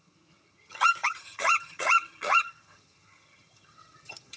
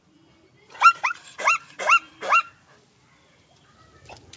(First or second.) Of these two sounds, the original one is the second